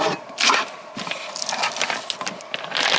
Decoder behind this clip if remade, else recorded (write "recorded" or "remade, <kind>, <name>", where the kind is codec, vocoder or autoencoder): recorded